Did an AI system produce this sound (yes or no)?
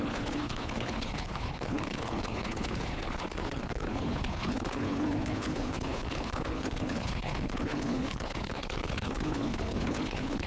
yes